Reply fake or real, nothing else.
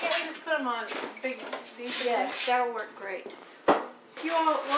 real